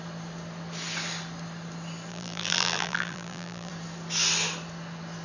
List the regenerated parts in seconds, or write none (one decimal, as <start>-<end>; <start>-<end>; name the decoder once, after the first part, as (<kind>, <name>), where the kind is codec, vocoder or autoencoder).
2.1-3.7 (vocoder, BigVGAN v2)